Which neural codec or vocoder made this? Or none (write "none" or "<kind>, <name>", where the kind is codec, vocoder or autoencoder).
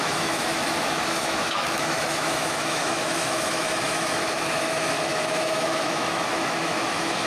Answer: autoencoder, DAC-VAE